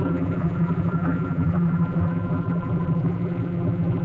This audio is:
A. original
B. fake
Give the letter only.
B